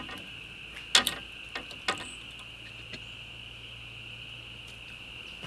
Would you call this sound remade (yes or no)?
no